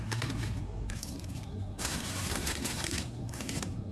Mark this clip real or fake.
fake